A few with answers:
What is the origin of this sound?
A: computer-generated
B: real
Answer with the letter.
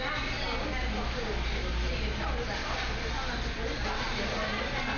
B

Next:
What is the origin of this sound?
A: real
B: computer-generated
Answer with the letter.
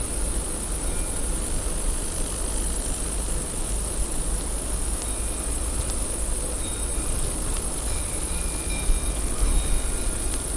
A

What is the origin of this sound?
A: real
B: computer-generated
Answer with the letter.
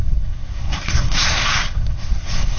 B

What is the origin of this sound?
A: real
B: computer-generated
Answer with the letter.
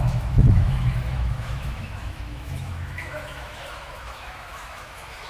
B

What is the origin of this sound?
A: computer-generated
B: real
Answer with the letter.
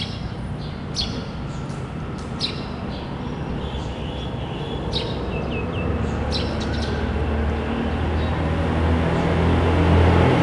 B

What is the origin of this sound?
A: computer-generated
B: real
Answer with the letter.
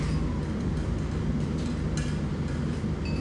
B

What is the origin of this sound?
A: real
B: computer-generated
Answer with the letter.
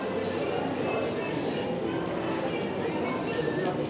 A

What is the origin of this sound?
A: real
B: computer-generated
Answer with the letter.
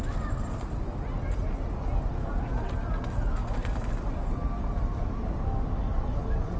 A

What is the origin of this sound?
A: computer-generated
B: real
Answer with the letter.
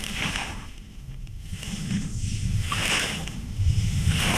A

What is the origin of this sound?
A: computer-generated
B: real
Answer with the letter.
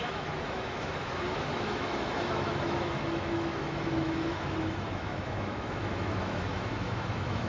A